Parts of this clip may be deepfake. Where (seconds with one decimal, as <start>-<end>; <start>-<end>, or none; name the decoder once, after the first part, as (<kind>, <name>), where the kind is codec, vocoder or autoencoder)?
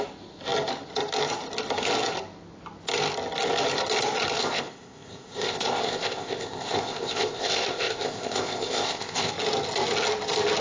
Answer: 4.4-9.3 (codec, ZipCodec)